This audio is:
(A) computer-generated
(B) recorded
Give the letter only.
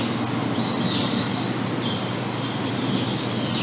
B